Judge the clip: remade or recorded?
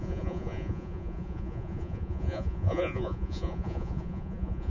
remade